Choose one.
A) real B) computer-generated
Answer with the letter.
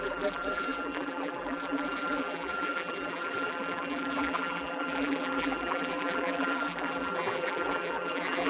B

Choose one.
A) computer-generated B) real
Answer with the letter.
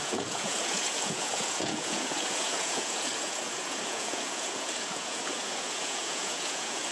A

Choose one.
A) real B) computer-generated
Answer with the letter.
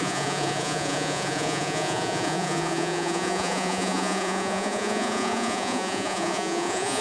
B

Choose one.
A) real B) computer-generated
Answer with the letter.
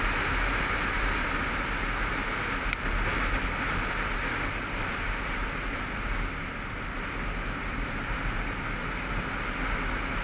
A